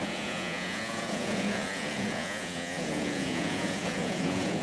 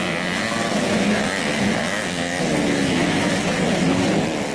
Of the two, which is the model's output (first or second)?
first